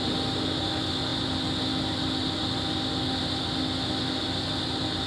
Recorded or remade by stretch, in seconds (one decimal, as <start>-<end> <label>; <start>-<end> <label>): 0.0-5.1 recorded